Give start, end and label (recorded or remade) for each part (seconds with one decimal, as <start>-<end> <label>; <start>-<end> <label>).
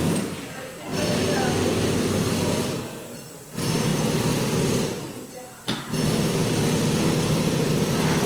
0.0-0.9 remade; 0.9-3.4 recorded; 3.4-3.9 remade; 3.9-5.6 recorded; 5.6-6.4 remade; 6.4-8.3 recorded